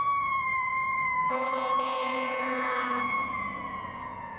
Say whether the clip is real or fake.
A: fake